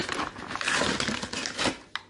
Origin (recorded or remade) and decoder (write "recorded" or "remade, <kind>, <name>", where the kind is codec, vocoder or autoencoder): recorded